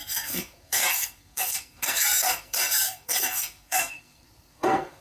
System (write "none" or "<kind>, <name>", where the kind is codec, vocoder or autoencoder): codec, SNAC